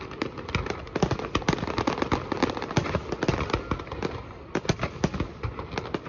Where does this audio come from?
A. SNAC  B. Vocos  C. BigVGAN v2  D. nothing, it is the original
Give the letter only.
D